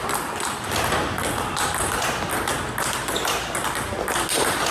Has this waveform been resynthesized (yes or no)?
no